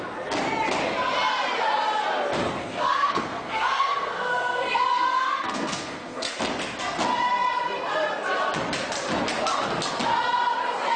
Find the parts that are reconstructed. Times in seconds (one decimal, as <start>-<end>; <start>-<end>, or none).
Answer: 2.6-6.4